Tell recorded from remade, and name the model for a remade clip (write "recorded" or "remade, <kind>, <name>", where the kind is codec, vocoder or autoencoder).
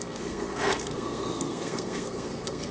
remade, codec, SNAC